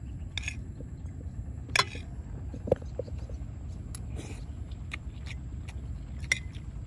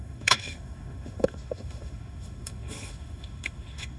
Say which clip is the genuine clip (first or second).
first